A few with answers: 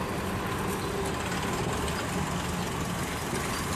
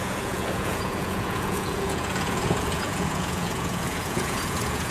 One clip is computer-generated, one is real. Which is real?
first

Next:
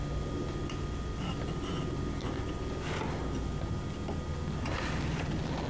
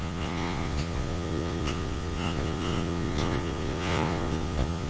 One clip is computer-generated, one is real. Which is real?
first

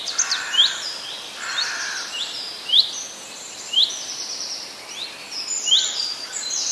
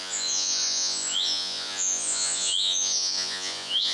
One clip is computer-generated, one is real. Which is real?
first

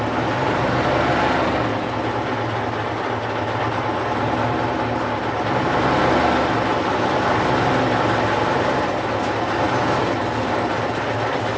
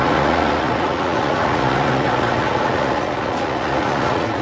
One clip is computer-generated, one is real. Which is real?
first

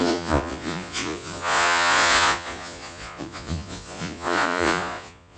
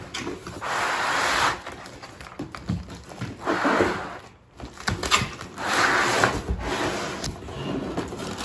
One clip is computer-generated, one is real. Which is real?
second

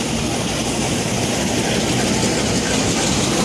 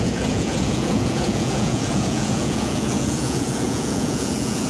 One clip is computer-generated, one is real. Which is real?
first